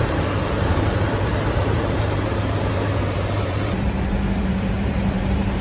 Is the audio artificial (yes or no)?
yes